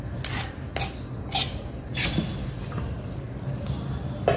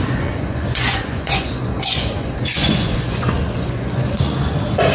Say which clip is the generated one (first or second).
second